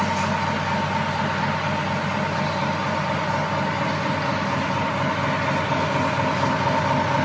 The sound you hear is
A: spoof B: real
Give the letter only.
B